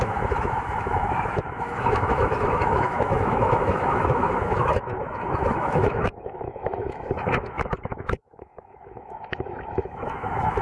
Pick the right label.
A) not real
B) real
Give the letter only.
A